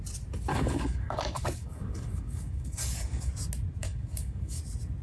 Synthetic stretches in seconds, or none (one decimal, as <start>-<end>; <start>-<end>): 0.5-3.3; 3.8-4.6